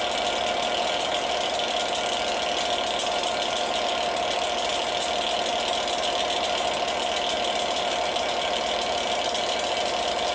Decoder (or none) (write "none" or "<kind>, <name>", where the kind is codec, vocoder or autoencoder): none